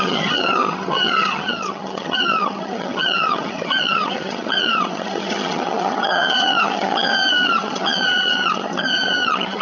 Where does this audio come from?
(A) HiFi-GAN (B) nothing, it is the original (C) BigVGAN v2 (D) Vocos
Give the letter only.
A